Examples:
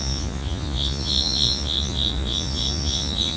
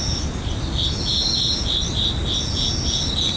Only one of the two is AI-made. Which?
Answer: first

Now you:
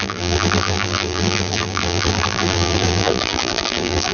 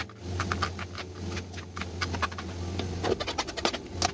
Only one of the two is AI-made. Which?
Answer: first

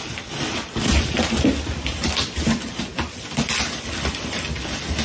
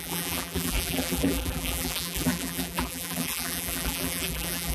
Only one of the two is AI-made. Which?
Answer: second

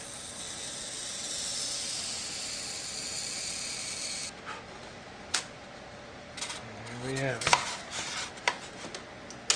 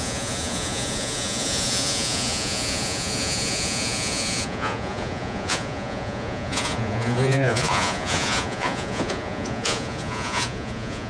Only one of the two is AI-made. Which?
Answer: second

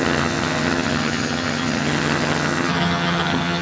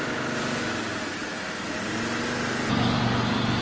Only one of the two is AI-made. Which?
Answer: first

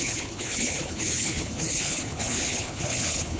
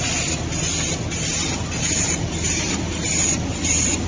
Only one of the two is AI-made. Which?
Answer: first